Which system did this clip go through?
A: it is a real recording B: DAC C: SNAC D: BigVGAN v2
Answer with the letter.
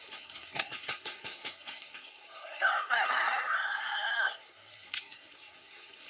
C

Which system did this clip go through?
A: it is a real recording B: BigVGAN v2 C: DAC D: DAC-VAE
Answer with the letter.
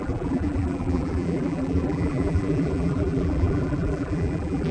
B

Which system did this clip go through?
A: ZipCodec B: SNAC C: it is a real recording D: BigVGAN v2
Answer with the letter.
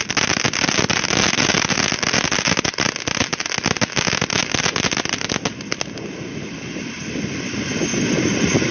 C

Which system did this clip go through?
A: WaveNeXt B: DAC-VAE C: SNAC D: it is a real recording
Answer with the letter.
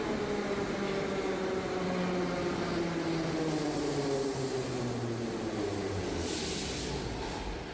D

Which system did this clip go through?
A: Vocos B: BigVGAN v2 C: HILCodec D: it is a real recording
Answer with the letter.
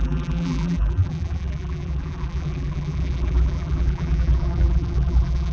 B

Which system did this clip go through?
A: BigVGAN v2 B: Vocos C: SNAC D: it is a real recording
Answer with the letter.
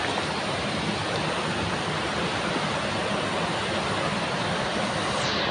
D